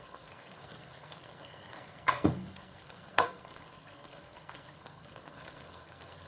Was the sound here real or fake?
fake